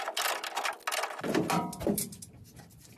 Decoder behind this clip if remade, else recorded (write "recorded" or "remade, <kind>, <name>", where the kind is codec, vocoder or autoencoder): recorded